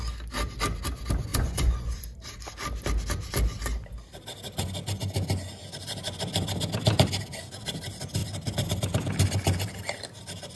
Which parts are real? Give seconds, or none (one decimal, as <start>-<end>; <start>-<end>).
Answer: 0.0-1.3; 2.0-10.6